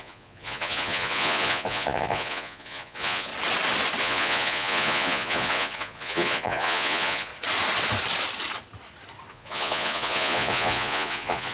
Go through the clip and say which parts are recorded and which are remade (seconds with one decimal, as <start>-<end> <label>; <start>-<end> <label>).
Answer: 0.0-3.3 remade; 3.3-4.0 recorded; 4.0-7.3 remade; 7.3-9.3 recorded; 9.3-11.5 remade